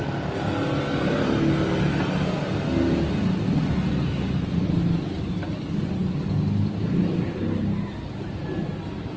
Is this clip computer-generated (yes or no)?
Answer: no